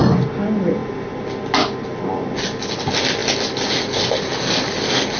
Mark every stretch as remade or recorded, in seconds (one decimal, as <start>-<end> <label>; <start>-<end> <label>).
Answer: 0.0-5.2 recorded